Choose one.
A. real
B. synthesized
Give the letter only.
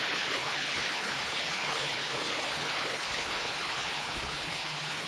B